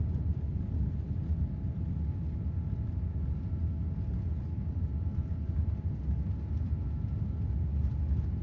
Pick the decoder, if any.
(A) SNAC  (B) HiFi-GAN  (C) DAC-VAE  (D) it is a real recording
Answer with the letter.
D